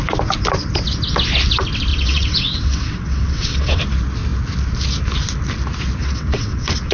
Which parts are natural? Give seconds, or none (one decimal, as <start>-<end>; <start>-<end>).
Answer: 0.0-1.9; 3.8-6.0